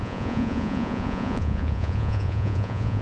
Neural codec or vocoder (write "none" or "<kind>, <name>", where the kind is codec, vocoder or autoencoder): vocoder, Vocos